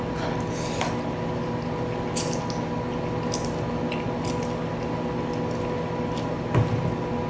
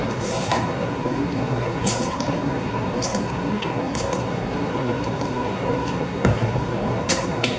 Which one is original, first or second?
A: first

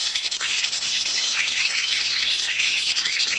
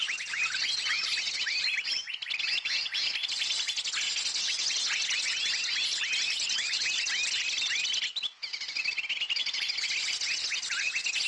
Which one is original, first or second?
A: second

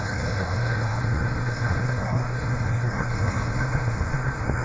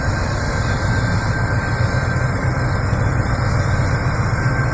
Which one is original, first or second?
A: second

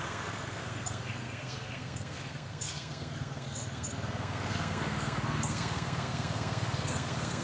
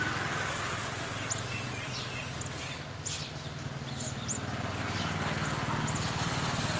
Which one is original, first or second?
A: second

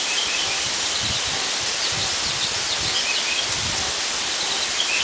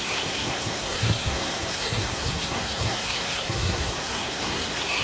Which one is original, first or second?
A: first